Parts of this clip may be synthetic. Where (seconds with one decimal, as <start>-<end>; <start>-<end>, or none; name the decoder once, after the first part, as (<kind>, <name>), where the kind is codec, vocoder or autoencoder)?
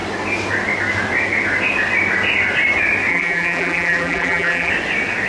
3.1-4.7 (vocoder, BigVGAN v2)